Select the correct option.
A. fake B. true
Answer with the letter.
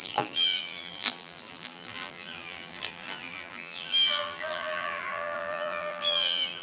A